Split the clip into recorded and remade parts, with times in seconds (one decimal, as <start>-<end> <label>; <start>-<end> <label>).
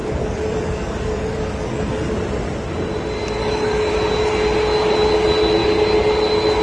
0.0-2.1 remade; 2.1-3.4 recorded; 3.4-3.9 remade; 3.9-6.6 recorded